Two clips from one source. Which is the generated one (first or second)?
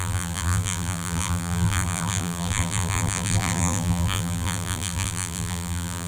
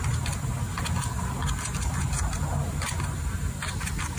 first